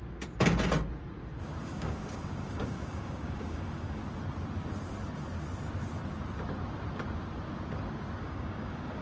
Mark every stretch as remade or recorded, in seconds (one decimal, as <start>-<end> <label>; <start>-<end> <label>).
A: 0.0-1.6 recorded; 1.6-4.0 remade; 4.0-8.2 recorded; 8.2-9.0 remade